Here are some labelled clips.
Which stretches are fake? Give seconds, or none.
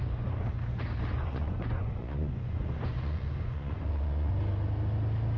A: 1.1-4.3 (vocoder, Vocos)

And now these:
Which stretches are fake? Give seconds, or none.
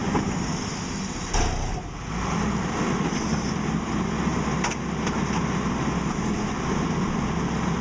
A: none